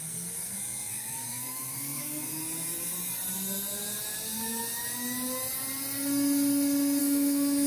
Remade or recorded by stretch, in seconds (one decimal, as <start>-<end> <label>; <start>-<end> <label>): 0.0-2.4 remade; 2.4-7.0 recorded; 7.0-7.7 remade

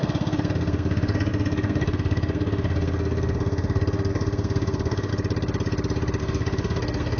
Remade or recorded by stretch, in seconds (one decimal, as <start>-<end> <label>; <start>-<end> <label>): 0.0-5.1 remade; 5.1-6.2 recorded; 6.2-7.2 remade

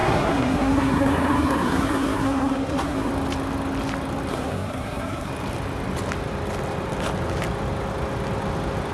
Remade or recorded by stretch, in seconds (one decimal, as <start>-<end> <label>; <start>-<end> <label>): 0.0-3.1 remade; 3.1-4.3 recorded; 4.3-5.3 remade; 5.3-8.9 recorded

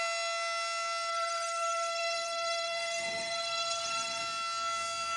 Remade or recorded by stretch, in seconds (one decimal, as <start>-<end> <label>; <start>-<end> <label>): 0.0-1.1 recorded; 1.1-4.2 remade; 4.2-5.2 recorded

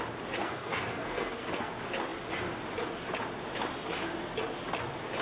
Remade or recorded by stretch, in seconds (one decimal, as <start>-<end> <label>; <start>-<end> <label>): 0.0-0.4 recorded; 0.4-1.7 remade; 1.7-5.2 recorded

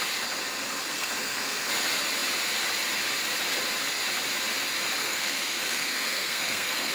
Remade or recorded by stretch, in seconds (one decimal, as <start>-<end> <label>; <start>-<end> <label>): 0.0-0.9 recorded; 0.9-1.7 remade; 1.7-5.0 recorded; 5.0-6.9 remade

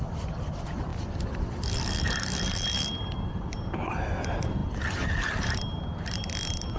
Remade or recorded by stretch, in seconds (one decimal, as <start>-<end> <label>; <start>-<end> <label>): 0.0-6.8 recorded